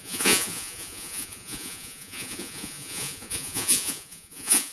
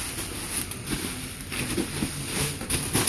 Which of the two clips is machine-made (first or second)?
first